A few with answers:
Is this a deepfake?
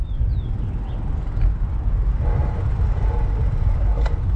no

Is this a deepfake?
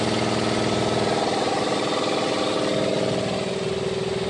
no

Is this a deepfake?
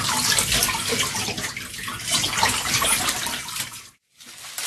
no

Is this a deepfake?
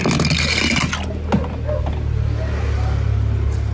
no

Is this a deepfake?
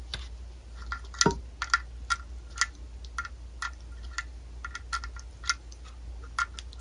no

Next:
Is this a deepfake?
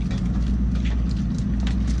no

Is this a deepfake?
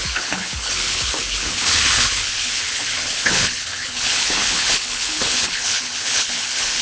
yes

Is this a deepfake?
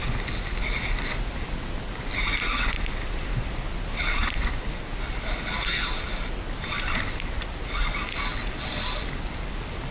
no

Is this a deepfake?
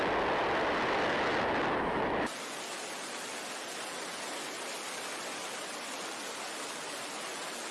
no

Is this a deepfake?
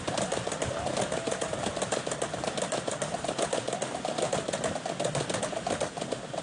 no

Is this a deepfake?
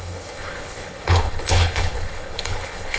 yes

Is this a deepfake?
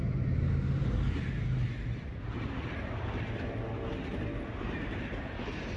no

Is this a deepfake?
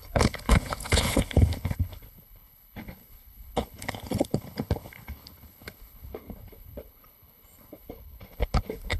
yes